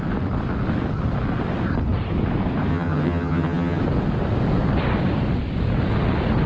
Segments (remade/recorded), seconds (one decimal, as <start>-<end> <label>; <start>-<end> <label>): 0.0-2.7 recorded; 2.7-3.8 remade; 3.8-6.5 recorded